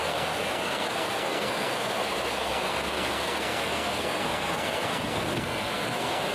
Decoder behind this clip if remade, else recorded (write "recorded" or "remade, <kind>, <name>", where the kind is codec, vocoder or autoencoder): remade, codec, SNAC